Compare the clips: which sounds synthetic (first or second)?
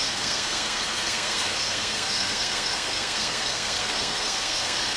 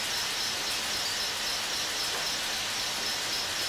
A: first